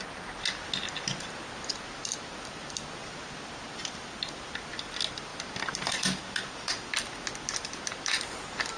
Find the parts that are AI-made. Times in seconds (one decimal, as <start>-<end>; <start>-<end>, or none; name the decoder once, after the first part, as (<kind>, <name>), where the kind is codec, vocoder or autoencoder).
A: none